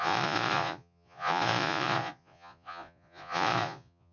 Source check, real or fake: fake